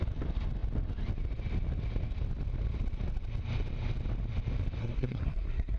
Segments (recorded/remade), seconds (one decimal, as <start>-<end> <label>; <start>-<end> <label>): 0.0-4.8 recorded; 4.8-5.8 remade